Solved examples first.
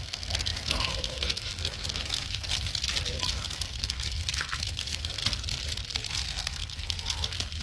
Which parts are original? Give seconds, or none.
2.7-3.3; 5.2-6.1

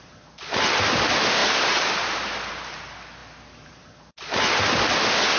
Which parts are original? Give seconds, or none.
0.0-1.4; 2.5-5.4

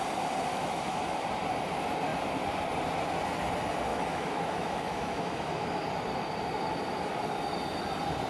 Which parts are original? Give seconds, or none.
0.0-0.5; 1.0-3.9; 5.8-8.3